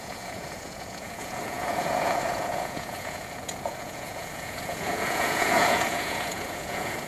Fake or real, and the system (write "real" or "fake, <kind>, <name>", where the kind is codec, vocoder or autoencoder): fake, vocoder, Vocos